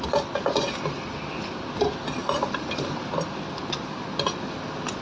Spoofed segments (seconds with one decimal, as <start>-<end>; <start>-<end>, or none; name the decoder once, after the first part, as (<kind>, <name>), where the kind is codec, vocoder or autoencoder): 2.2-2.9 (vocoder, BigVGAN v2)